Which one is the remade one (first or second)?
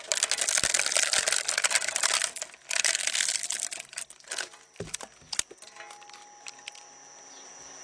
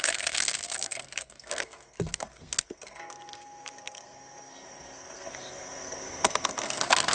second